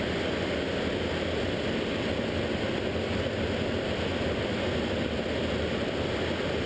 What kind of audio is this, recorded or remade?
recorded